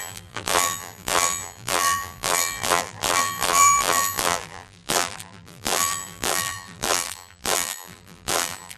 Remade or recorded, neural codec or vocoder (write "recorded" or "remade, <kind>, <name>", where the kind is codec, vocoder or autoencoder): remade, vocoder, BigVGAN v2